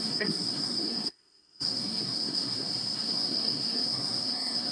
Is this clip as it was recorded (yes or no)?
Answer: no